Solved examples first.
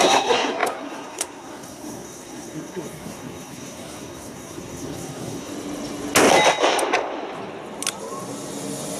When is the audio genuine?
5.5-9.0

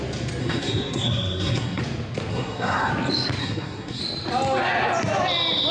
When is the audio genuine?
0.0-0.4; 1.8-2.3; 2.9-3.4; 4.0-5.7

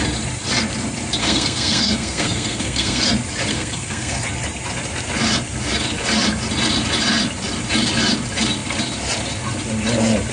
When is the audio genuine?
0.0-1.2; 3.0-3.5; 4.2-10.3

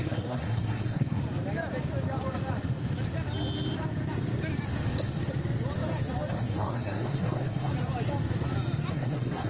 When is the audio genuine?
1.2-6.3; 7.7-8.9

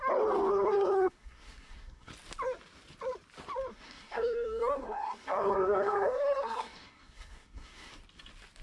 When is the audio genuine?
0.0-0.5; 2.1-3.7; 7.9-8.6

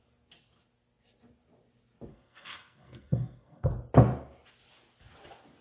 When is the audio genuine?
0.0-2.1; 3.7-5.6

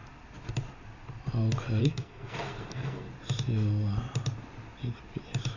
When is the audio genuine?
0.0-1.8; 3.1-5.6

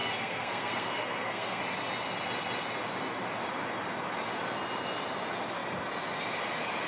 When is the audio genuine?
1.6-6.9